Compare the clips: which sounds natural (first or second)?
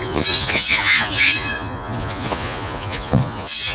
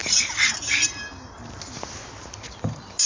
second